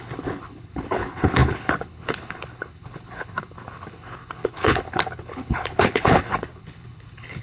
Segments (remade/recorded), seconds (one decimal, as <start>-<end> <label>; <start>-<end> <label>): 0.0-7.4 remade